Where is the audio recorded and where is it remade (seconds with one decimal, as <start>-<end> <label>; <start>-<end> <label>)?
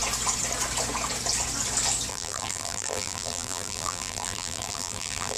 0.0-2.1 recorded; 2.1-5.4 remade